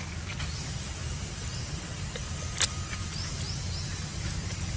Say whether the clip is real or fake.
real